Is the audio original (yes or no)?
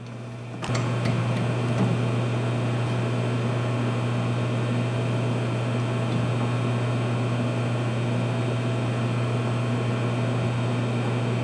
yes